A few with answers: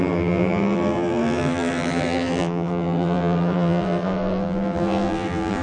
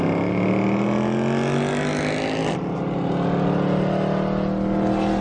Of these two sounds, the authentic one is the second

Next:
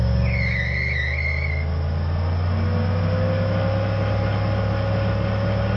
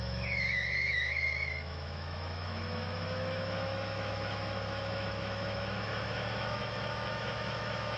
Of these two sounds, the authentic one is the first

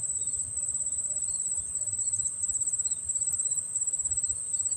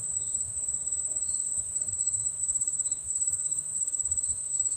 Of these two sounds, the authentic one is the first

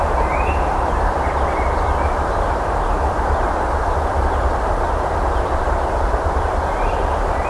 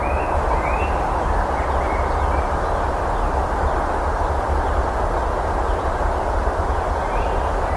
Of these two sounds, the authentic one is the second